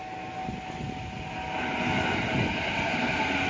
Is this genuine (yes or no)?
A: yes